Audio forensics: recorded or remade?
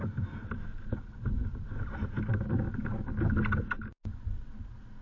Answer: recorded